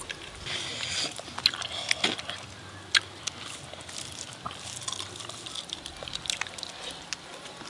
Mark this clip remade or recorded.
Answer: recorded